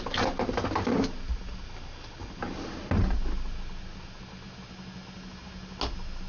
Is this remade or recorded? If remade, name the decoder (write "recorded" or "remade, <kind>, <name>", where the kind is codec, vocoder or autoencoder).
recorded